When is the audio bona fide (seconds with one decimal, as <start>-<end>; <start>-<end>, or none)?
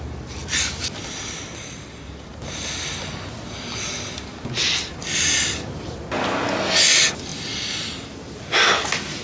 0.0-9.2